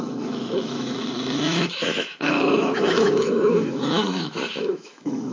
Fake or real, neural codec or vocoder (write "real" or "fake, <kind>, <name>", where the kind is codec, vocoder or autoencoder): fake, autoencoder, DAC-VAE